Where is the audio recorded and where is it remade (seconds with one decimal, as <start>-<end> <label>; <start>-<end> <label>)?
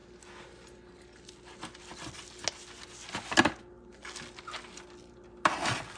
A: 0.0-6.0 recorded